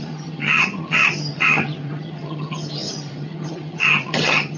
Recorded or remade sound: remade